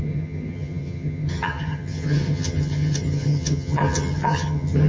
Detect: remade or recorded remade